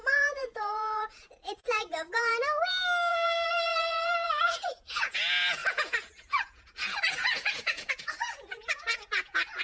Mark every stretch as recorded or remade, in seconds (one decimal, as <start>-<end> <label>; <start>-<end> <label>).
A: 0.0-2.3 remade; 2.3-3.1 recorded; 3.1-9.6 remade